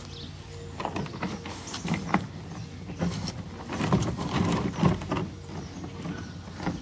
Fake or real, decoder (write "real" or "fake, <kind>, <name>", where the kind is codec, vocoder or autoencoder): real